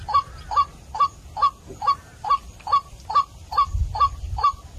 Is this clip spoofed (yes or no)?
no